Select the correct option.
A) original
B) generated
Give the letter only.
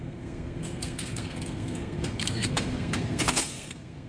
B